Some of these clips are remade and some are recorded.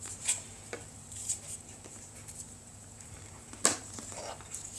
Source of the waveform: remade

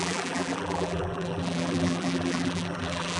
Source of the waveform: remade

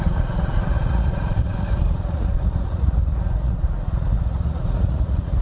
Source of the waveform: remade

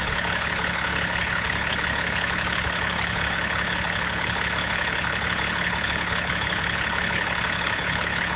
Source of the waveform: remade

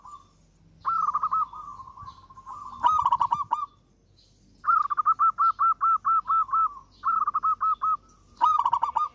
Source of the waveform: recorded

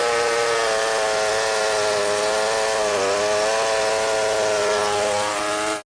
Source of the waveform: recorded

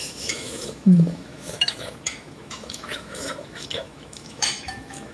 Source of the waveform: remade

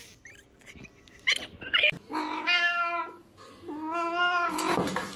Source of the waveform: recorded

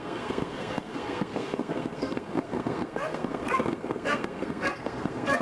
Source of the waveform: remade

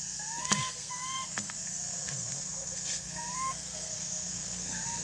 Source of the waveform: remade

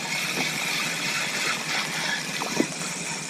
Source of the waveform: recorded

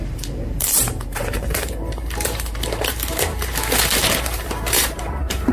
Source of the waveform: remade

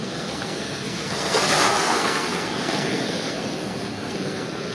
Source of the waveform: remade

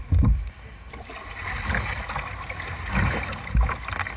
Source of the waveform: recorded